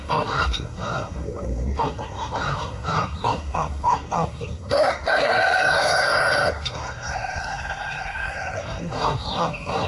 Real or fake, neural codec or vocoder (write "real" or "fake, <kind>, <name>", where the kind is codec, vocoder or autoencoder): fake, codec, SNAC